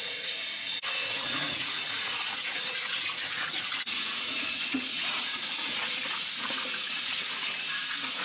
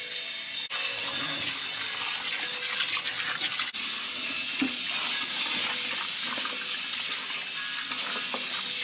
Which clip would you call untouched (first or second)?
second